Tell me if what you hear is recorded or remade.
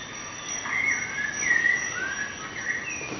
recorded